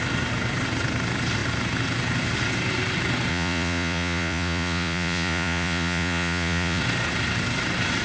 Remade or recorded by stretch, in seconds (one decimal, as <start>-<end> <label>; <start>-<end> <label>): 0.0-3.3 recorded; 3.3-6.8 remade; 6.8-8.0 recorded